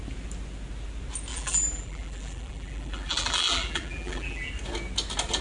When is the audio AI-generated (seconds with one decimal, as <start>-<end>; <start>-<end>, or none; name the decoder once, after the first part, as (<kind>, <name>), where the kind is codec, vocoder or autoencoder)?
1.3-4.5 (vocoder, BigVGAN v2)